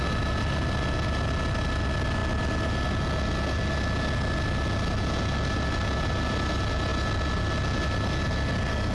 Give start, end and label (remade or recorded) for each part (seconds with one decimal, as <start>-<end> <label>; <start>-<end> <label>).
0.0-8.9 recorded